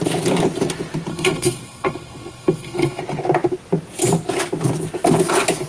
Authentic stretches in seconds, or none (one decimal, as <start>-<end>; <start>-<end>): 0.0-1.1; 3.0-5.7